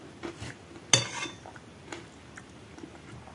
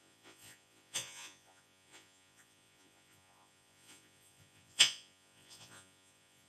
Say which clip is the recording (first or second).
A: first